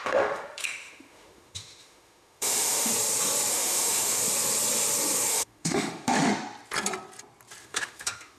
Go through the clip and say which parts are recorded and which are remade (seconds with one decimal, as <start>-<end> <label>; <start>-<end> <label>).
0.0-2.9 remade; 2.9-3.5 recorded; 3.5-4.2 remade; 4.2-5.3 recorded; 5.3-6.3 remade; 6.3-7.6 recorded; 7.6-8.4 remade

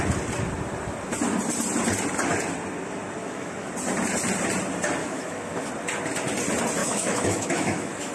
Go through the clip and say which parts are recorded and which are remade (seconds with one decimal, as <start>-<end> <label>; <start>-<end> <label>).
0.0-3.2 recorded; 3.2-3.7 remade; 3.7-5.0 recorded; 5.0-5.7 remade; 5.7-6.8 recorded; 6.8-8.1 remade